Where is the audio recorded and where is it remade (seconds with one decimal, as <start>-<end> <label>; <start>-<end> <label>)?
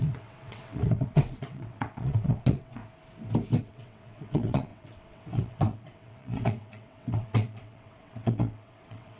0.0-2.8 remade; 2.8-3.6 recorded; 3.6-9.2 remade